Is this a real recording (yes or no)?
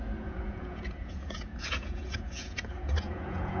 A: no